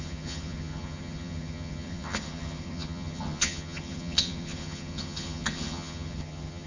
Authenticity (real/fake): fake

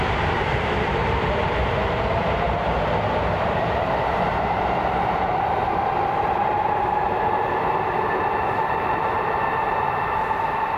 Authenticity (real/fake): fake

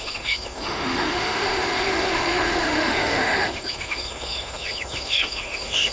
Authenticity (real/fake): fake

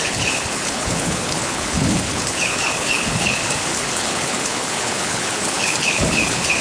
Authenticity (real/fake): fake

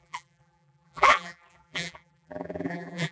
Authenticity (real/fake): fake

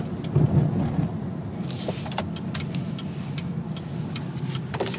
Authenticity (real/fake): real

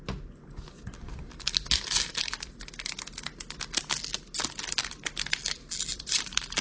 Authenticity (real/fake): real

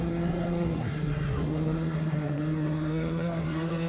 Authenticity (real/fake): fake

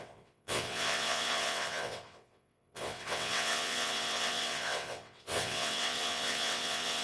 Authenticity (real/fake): fake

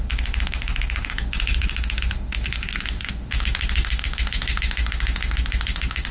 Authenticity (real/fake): fake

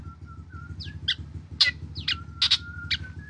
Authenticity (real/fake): real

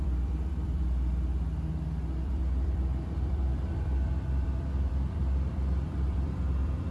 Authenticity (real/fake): fake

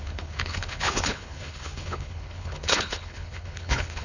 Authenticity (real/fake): fake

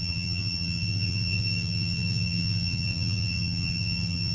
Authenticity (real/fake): fake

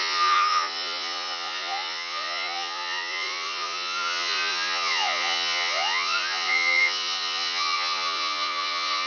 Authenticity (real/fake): fake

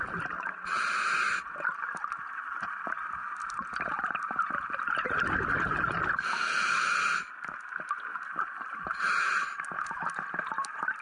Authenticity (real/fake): real